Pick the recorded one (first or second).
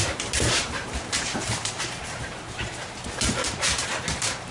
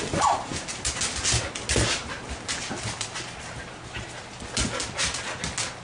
second